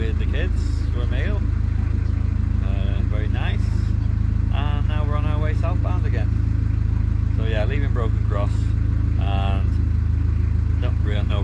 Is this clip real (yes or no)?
yes